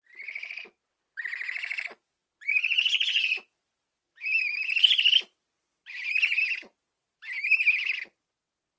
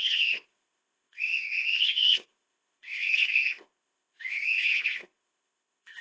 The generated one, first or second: second